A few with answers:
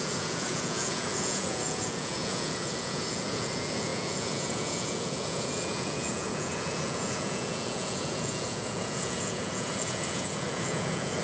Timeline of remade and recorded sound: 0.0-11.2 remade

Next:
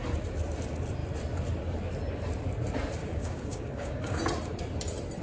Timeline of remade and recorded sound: 0.0-3.0 recorded; 3.0-4.2 remade; 4.2-5.2 recorded

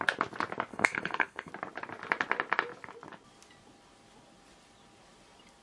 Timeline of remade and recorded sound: 0.0-0.7 recorded; 0.7-1.5 remade; 1.5-5.6 recorded

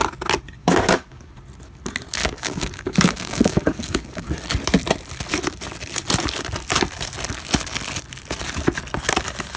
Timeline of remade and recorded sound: 0.0-0.6 recorded; 0.6-1.3 remade; 1.3-2.2 recorded; 2.2-4.3 remade; 4.3-9.6 recorded